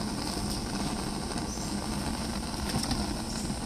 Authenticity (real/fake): real